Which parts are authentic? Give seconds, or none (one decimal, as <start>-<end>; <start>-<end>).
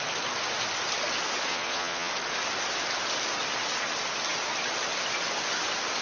0.0-1.5; 2.1-6.0